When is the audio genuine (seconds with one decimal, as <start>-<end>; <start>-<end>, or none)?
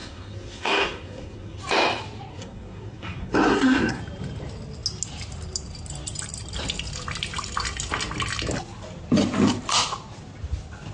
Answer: 1.6-2.3; 4.0-10.9